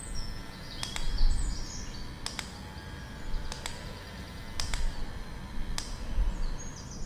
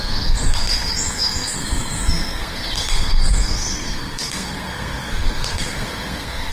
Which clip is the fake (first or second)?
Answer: second